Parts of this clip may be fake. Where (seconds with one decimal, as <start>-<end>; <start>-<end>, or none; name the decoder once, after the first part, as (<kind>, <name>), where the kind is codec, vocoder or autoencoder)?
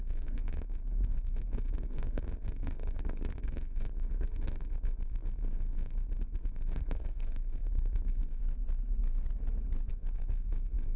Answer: 0.0-8.4 (codec, SNAC); 9.9-11.0